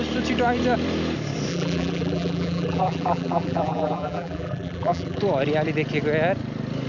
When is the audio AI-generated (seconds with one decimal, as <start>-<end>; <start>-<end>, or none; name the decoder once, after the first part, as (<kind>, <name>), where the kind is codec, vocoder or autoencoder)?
1.5-5.2 (vocoder, BigVGAN v2)